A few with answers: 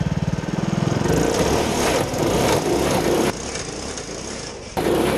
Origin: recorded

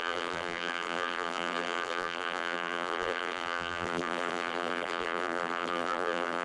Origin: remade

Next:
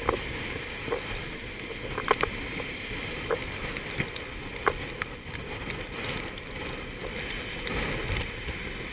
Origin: recorded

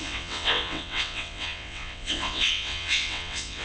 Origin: remade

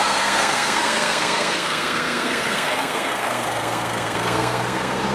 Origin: remade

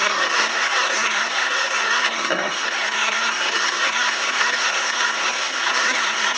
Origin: remade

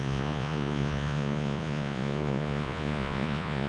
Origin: remade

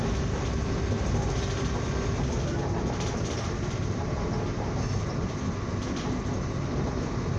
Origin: recorded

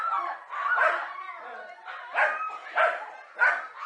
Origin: recorded